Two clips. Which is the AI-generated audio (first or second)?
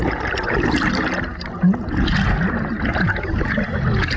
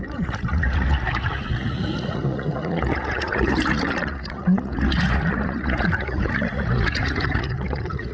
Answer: second